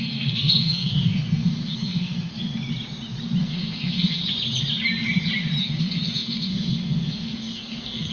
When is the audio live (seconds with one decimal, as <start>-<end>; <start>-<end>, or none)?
2.6-3.4; 4.2-5.6